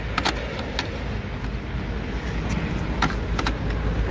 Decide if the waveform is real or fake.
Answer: real